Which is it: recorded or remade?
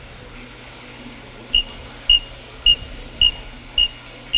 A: recorded